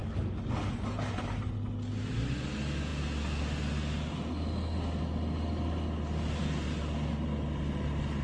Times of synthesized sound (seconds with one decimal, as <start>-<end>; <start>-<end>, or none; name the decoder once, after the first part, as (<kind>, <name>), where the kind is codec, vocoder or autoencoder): none